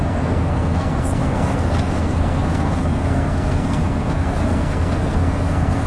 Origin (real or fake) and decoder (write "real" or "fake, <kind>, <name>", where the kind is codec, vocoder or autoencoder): fake, codec, SNAC